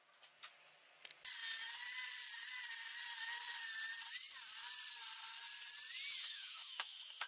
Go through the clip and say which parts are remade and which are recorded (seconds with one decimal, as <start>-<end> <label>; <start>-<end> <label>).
0.0-6.2 recorded; 6.2-7.3 remade